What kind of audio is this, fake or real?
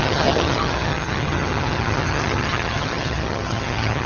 fake